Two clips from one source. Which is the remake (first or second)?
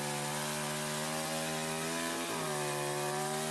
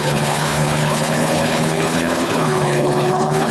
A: second